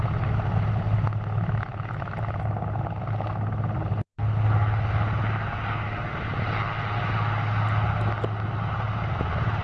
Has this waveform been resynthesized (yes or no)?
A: no